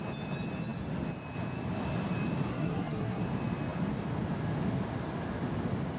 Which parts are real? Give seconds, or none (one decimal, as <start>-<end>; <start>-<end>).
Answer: 0.0-2.5; 3.2-6.0